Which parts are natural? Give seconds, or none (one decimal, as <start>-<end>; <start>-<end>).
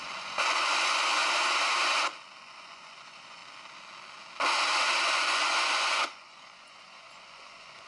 1.2-2.4; 3.4-5.0